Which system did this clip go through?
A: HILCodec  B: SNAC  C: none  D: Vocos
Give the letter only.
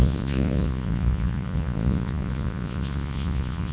D